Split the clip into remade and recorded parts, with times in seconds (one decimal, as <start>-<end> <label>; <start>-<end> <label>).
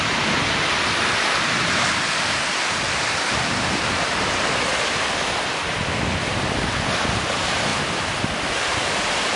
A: 0.0-9.4 remade